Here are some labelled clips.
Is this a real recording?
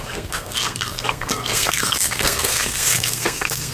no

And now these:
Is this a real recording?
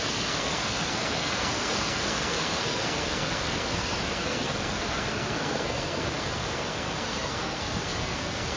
no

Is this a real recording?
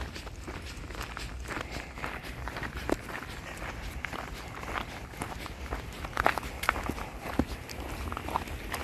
yes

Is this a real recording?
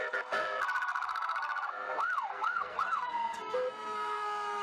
no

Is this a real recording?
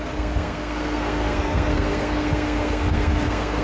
no